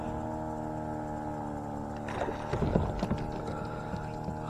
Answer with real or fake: real